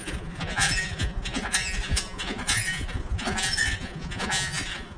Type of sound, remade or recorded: remade